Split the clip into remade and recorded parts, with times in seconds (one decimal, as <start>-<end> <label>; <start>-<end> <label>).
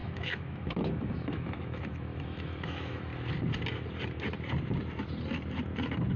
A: 0.0-3.1 remade; 3.1-6.2 recorded